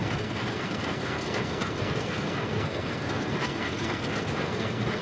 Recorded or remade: remade